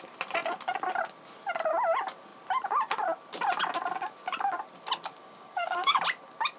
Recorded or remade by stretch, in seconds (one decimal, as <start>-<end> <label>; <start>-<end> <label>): 0.0-5.2 recorded; 5.2-6.0 remade; 6.0-6.6 recorded